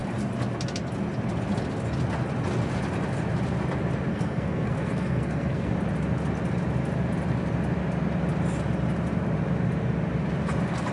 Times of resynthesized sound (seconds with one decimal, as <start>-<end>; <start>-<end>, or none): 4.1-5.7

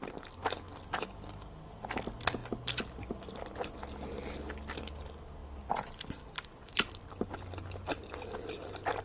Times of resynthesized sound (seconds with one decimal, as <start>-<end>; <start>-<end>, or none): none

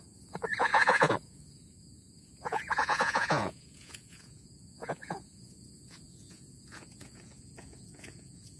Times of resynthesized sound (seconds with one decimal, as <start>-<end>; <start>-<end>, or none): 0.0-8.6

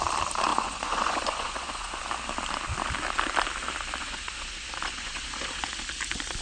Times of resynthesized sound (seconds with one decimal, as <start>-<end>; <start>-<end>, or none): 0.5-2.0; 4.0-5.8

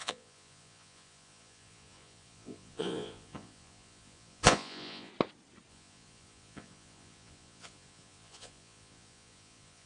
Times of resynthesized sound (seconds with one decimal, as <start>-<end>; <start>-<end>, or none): 0.0-5.1; 5.7-9.9

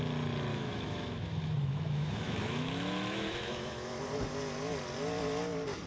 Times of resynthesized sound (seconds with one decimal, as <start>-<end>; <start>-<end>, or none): 0.5-4.0